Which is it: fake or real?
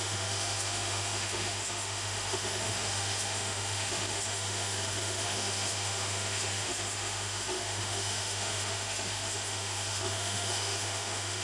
fake